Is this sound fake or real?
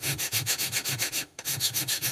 fake